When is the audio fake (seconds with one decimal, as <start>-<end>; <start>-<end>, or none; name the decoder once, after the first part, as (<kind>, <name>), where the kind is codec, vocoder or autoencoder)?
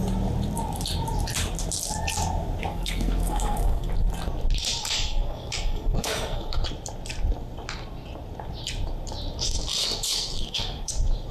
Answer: 2.7-3.9 (codec, SNAC); 4.8-6.6; 9.8-10.9